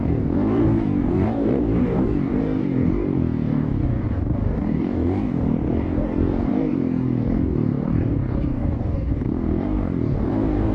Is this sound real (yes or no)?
no